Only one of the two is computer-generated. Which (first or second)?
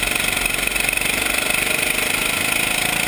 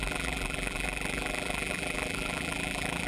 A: second